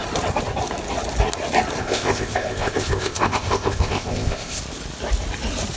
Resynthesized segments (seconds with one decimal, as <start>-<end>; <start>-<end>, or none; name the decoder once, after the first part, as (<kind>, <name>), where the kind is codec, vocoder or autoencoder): 1.8-4.6 (codec, ZipCodec)